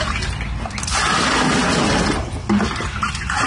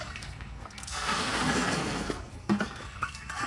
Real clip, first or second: first